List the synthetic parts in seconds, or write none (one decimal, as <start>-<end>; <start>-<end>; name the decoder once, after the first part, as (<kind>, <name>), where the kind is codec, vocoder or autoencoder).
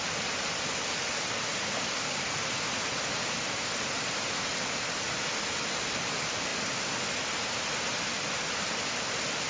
none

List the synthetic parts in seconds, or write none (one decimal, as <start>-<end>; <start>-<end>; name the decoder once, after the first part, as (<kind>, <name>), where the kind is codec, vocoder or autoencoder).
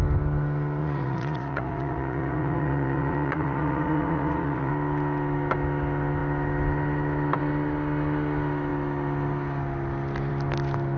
0.8-4.7 (vocoder, Vocos)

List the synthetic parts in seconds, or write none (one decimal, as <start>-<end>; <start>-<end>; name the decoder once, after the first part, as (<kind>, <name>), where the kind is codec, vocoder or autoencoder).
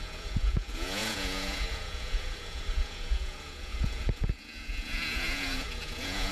0.0-6.3 (vocoder, Vocos)